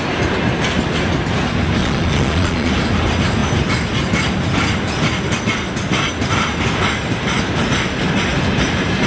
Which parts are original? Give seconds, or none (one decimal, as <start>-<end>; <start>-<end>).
0.0-1.8; 2.7-9.1